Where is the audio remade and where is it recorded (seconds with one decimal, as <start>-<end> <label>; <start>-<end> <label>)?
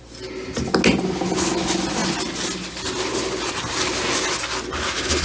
0.0-5.2 recorded